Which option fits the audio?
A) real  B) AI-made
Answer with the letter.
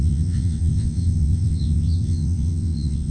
B